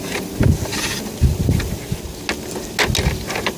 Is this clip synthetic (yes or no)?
no